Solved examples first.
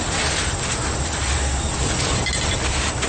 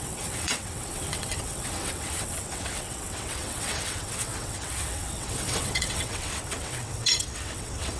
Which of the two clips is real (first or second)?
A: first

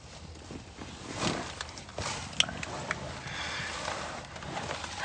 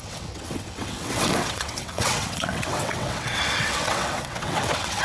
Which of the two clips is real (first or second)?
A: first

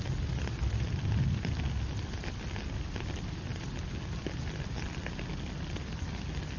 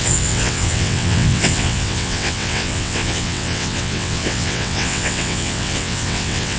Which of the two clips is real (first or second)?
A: first